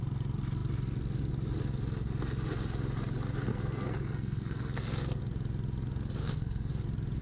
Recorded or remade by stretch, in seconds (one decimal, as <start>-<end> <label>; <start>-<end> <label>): 0.0-3.5 recorded; 3.5-5.2 remade; 5.2-6.2 recorded; 6.2-6.7 remade; 6.7-7.2 recorded